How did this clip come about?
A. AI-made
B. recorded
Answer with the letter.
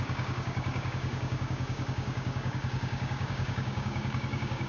A